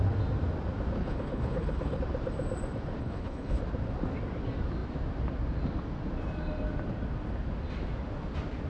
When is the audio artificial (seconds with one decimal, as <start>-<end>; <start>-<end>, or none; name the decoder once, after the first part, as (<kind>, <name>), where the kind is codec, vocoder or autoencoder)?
1.0-2.0 (codec, HILCodec); 3.0-3.6